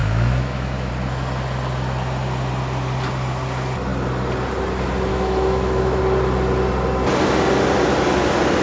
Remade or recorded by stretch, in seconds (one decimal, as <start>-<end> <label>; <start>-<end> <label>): 0.0-0.9 remade; 0.9-5.1 recorded; 5.1-6.0 remade; 6.0-8.6 recorded